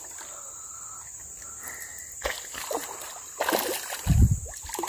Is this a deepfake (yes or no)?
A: no